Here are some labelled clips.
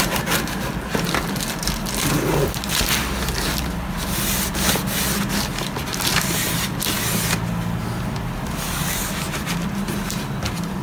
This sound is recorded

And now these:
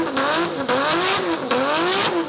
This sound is recorded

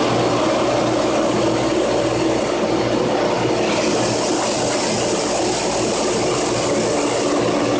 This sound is recorded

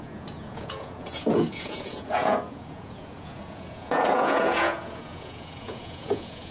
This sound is remade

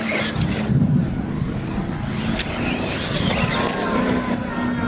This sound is recorded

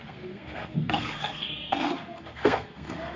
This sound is remade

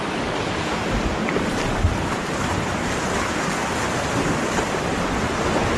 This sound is recorded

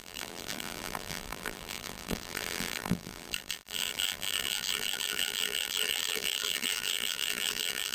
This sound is remade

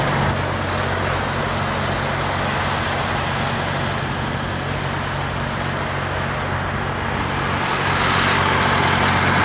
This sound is recorded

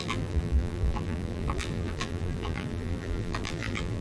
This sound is remade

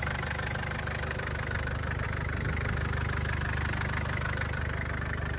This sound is recorded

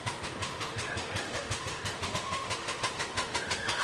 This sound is remade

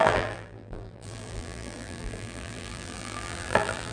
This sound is remade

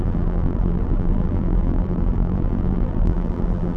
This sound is remade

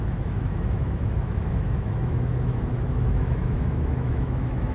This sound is remade